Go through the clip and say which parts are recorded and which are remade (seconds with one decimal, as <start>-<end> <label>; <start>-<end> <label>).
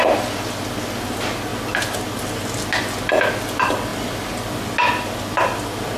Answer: 0.0-6.0 recorded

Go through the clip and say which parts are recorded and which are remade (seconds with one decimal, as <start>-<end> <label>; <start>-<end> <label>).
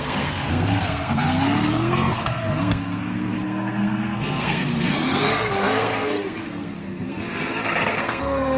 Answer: 0.0-8.6 remade